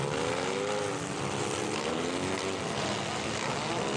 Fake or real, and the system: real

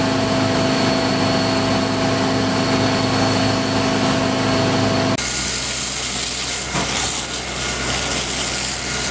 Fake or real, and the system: real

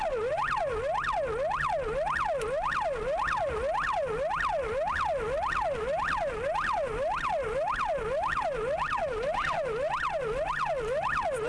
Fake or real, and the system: real